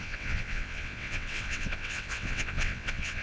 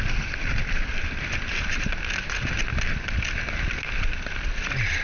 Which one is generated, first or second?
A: first